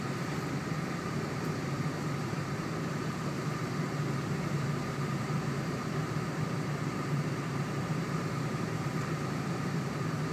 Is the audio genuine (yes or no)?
no